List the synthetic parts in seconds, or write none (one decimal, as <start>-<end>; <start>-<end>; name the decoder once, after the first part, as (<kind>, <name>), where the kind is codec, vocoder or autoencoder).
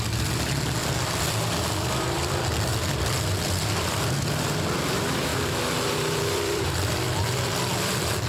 0.0-8.3 (vocoder, BigVGAN v2)